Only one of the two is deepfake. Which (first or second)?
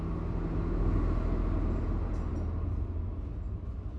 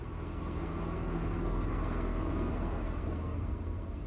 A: second